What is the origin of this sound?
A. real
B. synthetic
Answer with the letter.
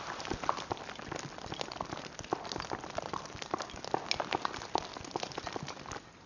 A